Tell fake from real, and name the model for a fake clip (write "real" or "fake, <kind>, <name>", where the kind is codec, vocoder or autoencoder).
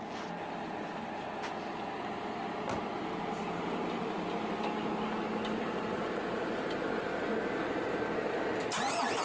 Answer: real